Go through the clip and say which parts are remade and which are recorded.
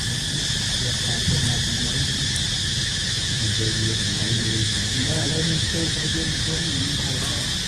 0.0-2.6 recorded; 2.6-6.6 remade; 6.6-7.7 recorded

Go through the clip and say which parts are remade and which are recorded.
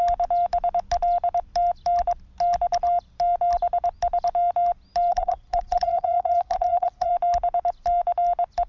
0.0-5.1 recorded; 5.1-7.1 remade; 7.1-8.7 recorded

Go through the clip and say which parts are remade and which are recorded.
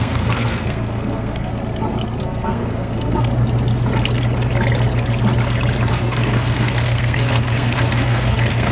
0.0-1.5 remade; 1.5-2.2 recorded; 2.2-3.3 remade; 3.3-5.9 recorded; 5.9-8.7 remade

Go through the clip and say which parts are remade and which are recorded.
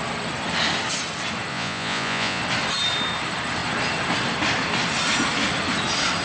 0.0-1.5 recorded; 1.5-2.4 remade; 2.4-6.2 recorded